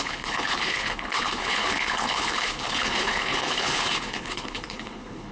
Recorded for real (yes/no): no